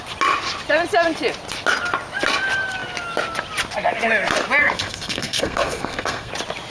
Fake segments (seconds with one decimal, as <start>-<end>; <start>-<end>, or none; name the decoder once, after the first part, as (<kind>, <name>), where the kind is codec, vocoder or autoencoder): 4.6-6.3 (codec, SNAC)